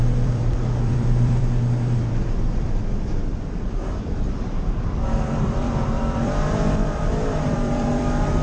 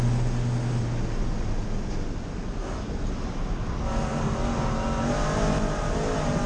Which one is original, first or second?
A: second